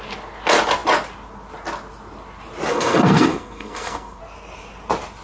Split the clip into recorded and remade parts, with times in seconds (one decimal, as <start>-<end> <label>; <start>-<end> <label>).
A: 0.0-2.7 recorded; 2.7-4.2 remade; 4.2-5.2 recorded